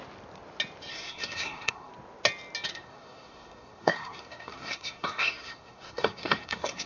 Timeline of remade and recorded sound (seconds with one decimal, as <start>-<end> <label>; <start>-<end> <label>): 0.0-0.9 recorded; 0.9-1.9 remade; 1.9-2.7 recorded; 2.7-6.9 remade